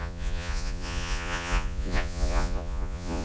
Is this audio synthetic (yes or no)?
yes